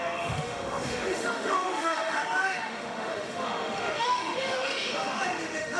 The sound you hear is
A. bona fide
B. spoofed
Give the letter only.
B